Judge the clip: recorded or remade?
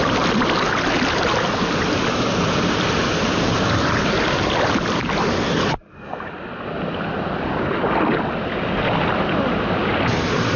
recorded